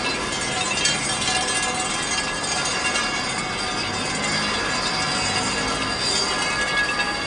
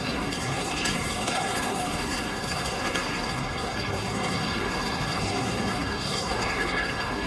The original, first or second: first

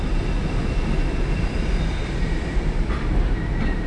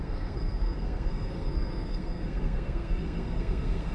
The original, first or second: first